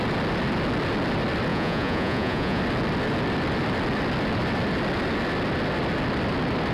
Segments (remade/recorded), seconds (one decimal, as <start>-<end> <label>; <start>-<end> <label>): 0.0-1.5 recorded; 1.5-2.6 remade; 2.6-6.7 recorded